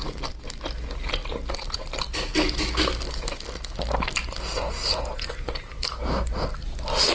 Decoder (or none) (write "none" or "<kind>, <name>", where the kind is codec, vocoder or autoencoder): none